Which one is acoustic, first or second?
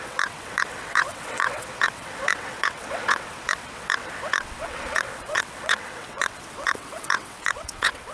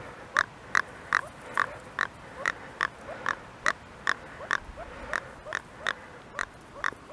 second